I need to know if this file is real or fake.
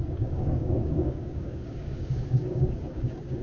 fake